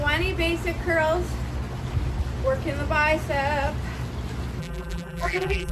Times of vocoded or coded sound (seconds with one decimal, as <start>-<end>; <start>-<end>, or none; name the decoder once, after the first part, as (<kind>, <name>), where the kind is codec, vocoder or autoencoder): 4.6-5.7 (vocoder, BigVGAN v2)